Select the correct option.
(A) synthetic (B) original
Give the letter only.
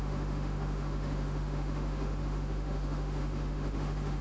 A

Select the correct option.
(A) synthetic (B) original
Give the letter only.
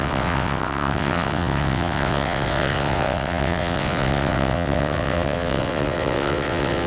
A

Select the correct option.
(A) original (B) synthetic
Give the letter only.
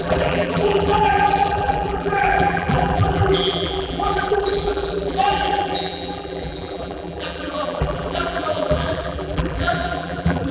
B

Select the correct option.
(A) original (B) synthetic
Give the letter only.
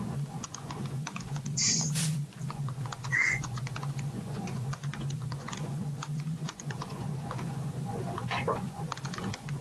B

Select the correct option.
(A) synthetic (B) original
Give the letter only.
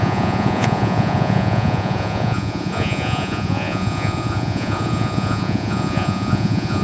A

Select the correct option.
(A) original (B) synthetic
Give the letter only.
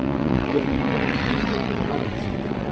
B